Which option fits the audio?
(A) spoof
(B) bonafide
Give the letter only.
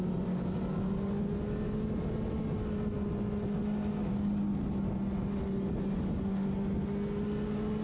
B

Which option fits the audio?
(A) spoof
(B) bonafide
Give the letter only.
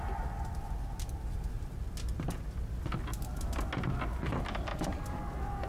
B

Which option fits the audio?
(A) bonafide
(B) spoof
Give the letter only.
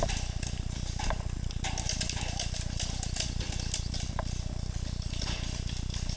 A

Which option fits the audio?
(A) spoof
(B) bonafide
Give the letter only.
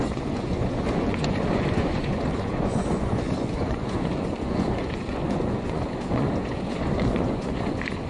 A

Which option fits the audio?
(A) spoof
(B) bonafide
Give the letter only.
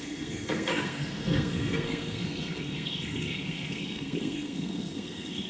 A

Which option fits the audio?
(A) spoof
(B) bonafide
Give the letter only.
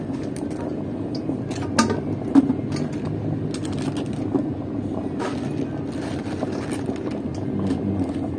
B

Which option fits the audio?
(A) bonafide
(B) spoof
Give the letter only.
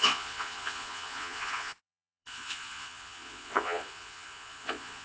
B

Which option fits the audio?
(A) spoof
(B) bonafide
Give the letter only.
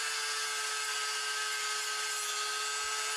B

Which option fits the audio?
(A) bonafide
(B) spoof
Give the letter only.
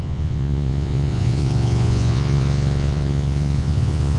B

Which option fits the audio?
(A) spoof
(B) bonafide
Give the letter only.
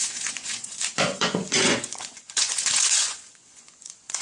A